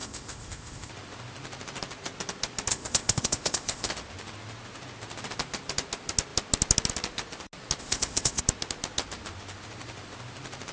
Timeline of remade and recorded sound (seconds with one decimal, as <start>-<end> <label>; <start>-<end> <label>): 0.0-0.9 remade; 0.9-2.7 recorded; 2.7-3.9 remade; 3.9-7.8 recorded; 7.8-8.4 remade; 8.4-10.7 recorded